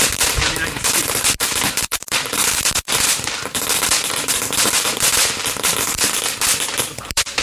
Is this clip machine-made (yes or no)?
yes